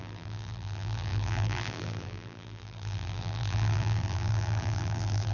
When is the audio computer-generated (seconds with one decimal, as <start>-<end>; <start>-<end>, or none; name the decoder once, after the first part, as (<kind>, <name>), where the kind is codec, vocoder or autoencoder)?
0.0-5.3 (vocoder, BigVGAN v2)